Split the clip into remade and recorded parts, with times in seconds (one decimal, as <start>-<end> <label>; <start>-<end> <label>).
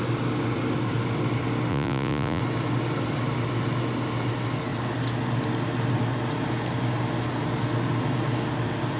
0.0-1.7 recorded; 1.7-2.4 remade; 2.4-9.0 recorded